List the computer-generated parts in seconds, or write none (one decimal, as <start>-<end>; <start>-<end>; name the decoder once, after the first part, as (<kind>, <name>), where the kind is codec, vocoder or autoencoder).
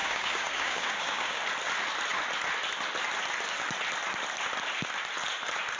0.0-1.4 (codec, DAC)